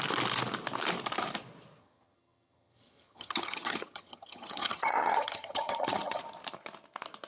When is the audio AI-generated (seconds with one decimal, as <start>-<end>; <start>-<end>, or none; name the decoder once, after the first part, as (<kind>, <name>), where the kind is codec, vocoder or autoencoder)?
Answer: 1.8-6.2 (vocoder, HiFi-GAN)

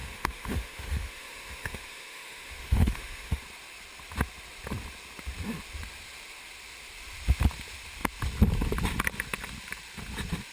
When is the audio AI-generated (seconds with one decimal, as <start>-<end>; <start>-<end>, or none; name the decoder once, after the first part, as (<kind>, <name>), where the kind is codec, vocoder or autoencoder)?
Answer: 0.0-3.4 (autoencoder, DAC-VAE)

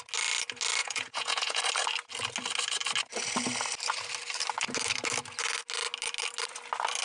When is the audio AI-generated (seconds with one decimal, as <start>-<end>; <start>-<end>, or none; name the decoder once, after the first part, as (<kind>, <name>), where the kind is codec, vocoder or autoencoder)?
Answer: 0.8-1.6 (vocoder, Vocos)

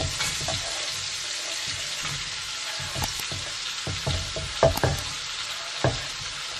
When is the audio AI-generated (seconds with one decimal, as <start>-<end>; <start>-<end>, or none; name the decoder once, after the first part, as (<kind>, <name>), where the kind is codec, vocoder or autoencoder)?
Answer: none